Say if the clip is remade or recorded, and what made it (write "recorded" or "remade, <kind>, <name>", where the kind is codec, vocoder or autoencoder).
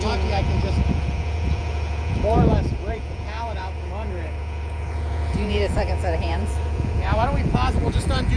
remade, vocoder, Vocos